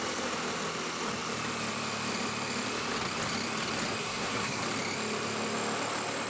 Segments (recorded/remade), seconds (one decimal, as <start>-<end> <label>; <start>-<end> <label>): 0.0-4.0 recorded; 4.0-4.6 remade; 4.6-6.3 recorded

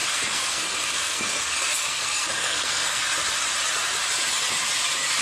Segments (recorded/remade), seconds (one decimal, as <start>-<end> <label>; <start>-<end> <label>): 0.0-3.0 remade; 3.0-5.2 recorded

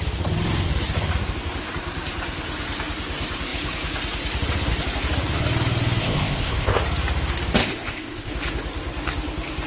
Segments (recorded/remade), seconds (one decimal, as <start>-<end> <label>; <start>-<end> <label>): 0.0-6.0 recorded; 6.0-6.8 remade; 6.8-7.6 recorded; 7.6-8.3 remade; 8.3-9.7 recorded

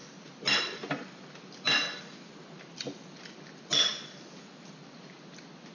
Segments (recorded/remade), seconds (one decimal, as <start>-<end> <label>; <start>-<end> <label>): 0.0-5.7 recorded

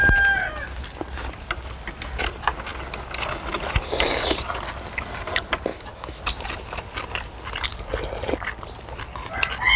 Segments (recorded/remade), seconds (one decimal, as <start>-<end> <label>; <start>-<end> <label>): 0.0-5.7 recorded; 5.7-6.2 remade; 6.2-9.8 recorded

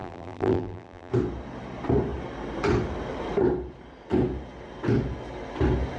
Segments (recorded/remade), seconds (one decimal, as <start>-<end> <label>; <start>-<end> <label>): 0.0-1.1 remade; 1.1-6.0 recorded